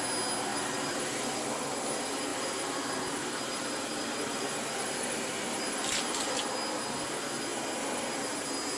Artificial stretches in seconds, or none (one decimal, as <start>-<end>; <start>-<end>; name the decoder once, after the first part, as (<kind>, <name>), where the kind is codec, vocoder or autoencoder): 0.5-1.8 (vocoder, BigVGAN v2); 2.3-5.6